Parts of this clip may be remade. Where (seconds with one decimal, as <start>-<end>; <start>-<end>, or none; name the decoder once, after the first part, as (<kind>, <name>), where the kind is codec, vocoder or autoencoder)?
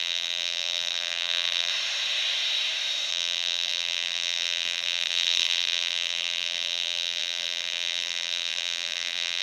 0.0-1.7 (vocoder, BigVGAN v2); 3.1-9.4